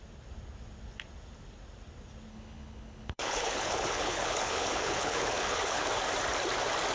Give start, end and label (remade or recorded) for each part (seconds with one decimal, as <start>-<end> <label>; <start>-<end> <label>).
0.0-2.3 recorded; 2.3-5.9 remade; 5.9-6.9 recorded